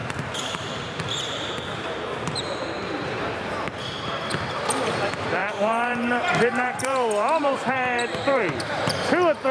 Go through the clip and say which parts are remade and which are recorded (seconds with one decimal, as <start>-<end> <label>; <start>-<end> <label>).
0.0-3.8 remade; 3.8-5.4 recorded; 5.4-8.9 remade; 8.9-9.5 recorded